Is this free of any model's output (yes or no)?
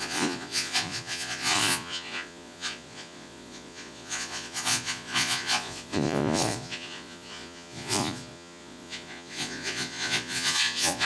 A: no